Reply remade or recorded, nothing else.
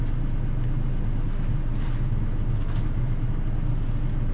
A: recorded